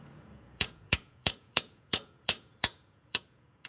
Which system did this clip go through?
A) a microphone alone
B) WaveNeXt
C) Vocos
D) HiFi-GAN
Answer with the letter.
C